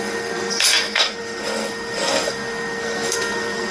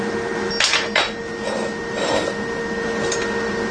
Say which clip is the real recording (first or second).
second